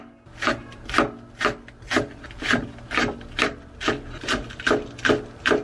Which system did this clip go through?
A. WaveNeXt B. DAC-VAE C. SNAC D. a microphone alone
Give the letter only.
D